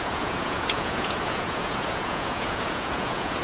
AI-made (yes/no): yes